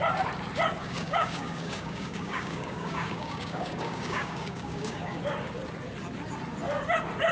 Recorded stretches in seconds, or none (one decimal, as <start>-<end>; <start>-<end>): 0.0-0.8; 5.2-7.3